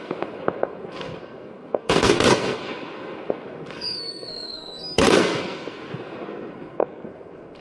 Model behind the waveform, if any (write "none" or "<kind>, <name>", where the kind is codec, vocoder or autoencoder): codec, SNAC